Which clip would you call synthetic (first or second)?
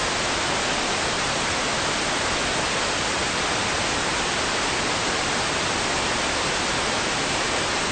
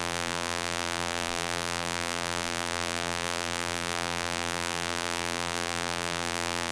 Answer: second